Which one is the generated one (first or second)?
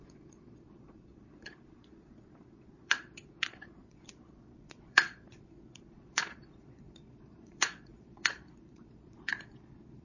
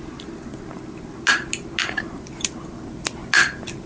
first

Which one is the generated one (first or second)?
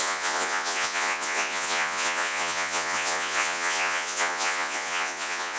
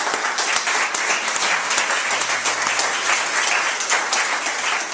first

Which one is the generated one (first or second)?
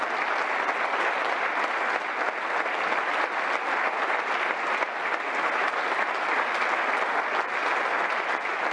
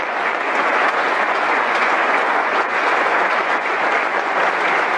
second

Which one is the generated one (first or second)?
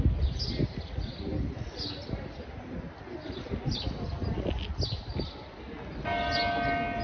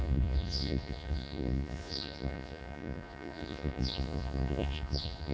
second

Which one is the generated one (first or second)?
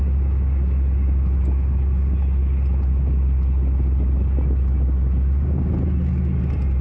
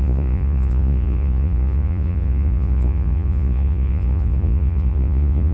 second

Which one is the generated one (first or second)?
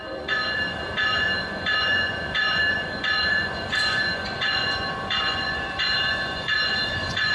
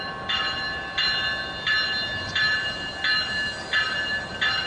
first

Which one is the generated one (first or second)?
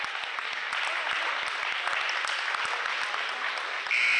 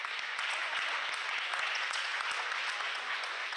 second